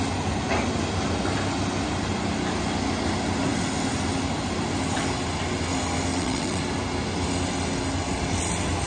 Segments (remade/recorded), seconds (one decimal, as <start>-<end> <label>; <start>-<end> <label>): 0.0-6.1 recorded; 6.1-6.6 remade; 6.6-8.9 recorded